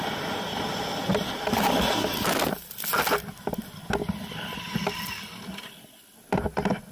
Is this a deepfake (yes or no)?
no